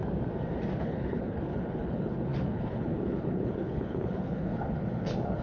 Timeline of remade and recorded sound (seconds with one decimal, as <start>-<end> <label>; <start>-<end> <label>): 0.0-0.8 recorded; 0.8-5.4 remade